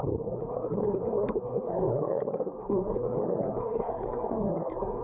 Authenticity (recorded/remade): remade